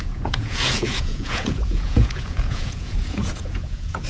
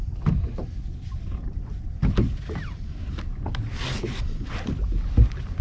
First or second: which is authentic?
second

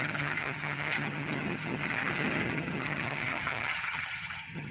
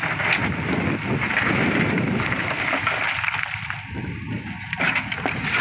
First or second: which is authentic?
second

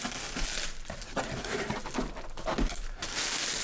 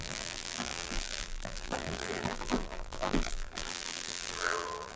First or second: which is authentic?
first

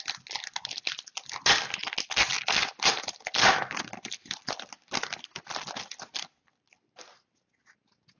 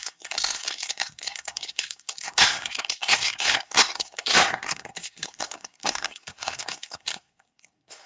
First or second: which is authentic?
first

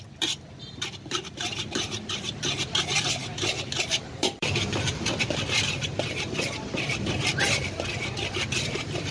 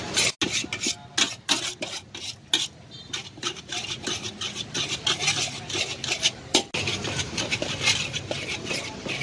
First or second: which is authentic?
second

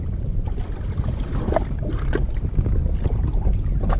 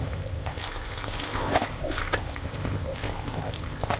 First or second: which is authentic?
first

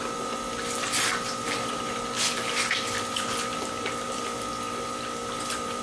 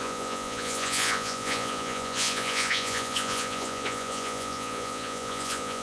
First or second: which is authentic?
first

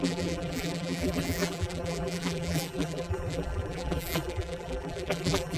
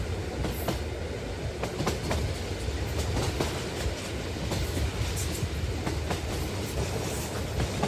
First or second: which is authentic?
second